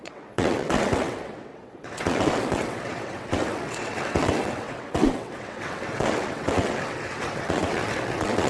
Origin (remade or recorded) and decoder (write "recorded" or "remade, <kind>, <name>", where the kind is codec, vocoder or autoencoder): remade, vocoder, WaveNeXt